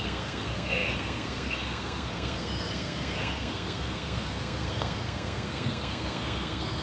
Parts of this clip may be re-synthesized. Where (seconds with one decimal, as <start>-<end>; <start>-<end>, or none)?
0.0-6.8